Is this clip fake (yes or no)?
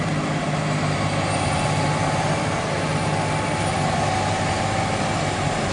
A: no